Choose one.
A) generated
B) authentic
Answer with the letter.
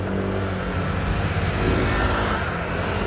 B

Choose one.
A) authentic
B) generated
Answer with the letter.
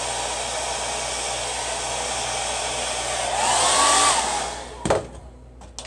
A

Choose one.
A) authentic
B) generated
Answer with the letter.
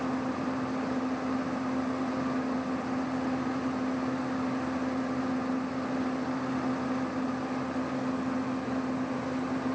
A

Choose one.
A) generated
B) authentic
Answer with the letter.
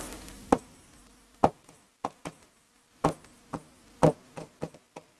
B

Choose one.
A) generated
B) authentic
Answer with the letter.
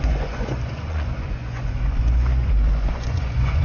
A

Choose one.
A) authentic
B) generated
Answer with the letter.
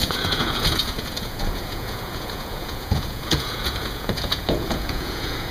B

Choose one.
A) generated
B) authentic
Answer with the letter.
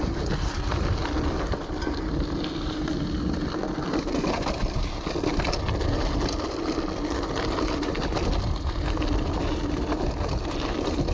B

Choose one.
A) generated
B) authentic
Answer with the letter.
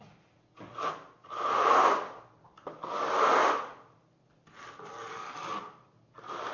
B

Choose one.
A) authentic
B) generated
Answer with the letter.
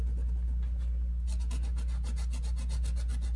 A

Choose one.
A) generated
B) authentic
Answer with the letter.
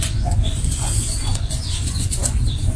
A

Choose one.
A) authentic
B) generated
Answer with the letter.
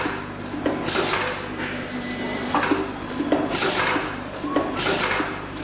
A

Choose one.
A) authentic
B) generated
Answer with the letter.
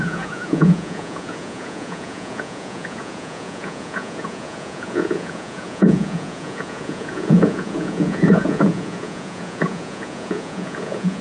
B